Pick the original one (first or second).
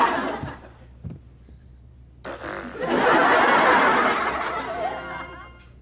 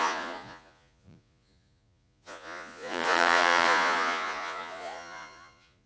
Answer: first